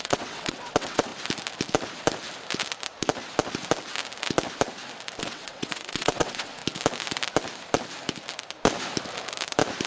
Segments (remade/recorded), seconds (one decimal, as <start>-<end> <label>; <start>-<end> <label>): 0.0-1.1 remade; 1.1-5.2 recorded; 5.2-6.6 remade; 6.6-9.9 recorded